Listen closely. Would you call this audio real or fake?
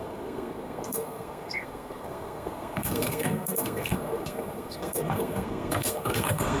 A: fake